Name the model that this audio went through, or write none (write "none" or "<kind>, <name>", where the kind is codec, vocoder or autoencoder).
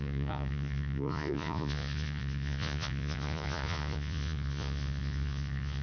vocoder, Vocos